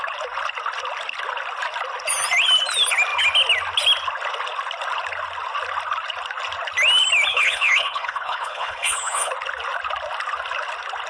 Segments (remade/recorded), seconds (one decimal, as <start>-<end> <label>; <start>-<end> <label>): 0.0-7.3 recorded; 7.3-9.3 remade; 9.3-11.1 recorded